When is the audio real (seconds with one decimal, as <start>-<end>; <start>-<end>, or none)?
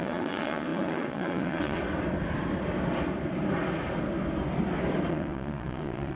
1.8-5.1